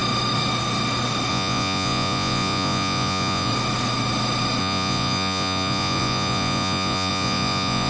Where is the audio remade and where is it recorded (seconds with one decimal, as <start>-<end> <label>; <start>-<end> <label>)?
0.0-1.3 recorded; 1.3-3.5 remade; 3.5-4.6 recorded; 4.6-7.9 remade